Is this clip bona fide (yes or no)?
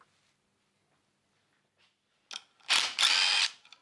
yes